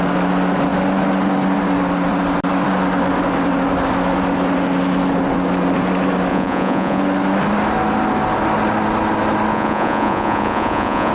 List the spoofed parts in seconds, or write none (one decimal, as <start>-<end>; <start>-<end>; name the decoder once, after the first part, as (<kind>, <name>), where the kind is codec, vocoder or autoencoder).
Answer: 6.3-7.0 (vocoder, Vocos); 9.5-11.1